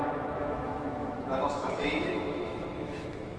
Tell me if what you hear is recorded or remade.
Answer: remade